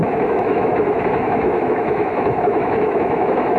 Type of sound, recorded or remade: remade